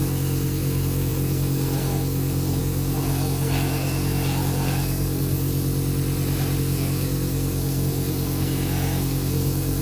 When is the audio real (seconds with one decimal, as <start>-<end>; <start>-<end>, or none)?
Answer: 5.5-6.6